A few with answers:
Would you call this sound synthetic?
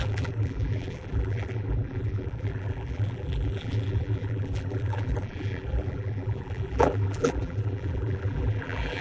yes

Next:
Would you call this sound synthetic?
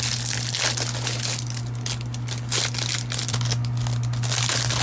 no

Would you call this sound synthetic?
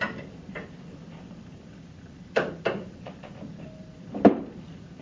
yes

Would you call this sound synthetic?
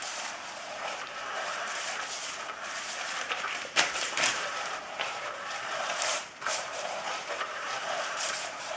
yes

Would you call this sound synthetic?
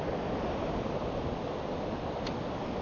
no